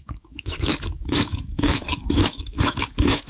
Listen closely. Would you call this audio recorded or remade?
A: remade